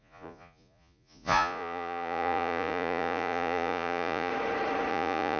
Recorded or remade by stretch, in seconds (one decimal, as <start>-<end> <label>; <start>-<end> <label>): 0.0-4.3 remade; 4.3-4.9 recorded; 4.9-5.4 remade